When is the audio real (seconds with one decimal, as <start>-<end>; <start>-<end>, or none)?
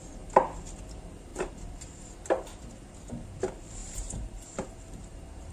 0.0-1.3; 2.2-3.8